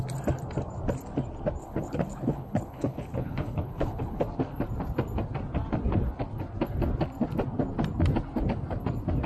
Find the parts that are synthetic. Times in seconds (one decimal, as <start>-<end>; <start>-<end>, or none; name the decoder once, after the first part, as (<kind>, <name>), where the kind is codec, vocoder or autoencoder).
1.6-4.2 (codec, HILCodec)

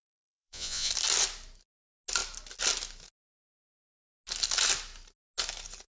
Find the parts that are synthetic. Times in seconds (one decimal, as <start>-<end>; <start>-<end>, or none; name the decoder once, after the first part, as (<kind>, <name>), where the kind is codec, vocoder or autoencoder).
0.0-0.9 (vocoder, Vocos)

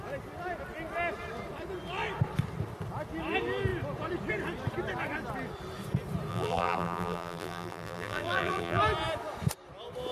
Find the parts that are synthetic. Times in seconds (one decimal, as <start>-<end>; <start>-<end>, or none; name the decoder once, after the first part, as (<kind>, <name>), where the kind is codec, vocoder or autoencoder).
6.3-8.8 (vocoder, BigVGAN v2)